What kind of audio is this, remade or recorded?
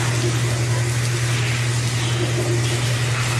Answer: recorded